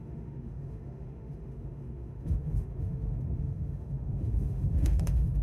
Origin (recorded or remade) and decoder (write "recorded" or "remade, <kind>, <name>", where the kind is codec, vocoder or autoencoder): remade, autoencoder, DAC-VAE